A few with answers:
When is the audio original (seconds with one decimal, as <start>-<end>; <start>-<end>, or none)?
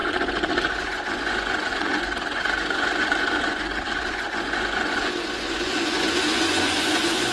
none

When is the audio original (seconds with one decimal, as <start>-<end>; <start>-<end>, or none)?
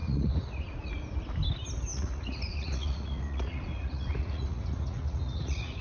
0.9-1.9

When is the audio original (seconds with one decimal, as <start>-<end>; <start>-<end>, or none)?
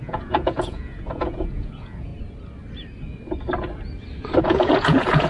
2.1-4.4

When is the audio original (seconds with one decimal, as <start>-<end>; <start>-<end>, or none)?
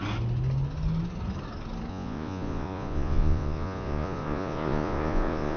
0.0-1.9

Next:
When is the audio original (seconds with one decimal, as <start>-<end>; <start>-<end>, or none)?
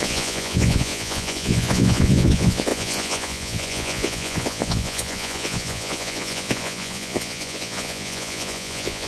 none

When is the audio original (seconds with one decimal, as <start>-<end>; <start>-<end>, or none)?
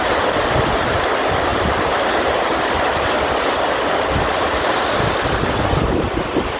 0.0-6.6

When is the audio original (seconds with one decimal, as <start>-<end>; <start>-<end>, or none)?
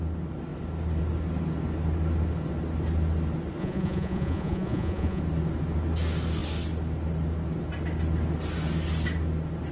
0.0-3.6; 5.2-9.7